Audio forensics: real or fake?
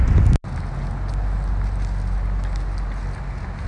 real